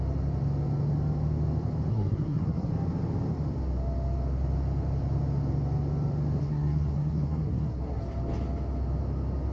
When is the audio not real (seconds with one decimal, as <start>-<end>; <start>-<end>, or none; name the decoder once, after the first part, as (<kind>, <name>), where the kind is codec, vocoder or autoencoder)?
1.9-2.7 (codec, SNAC); 6.4-8.0